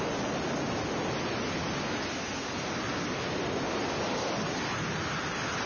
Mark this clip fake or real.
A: real